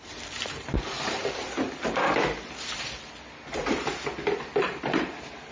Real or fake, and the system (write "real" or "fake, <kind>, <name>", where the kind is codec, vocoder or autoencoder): fake, vocoder, BigVGAN v2